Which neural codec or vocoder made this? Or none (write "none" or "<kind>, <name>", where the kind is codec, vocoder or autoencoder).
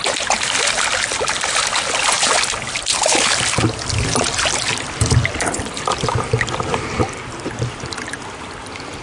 none